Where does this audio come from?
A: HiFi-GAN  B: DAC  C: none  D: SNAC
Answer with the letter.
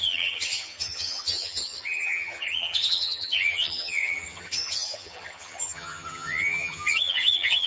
A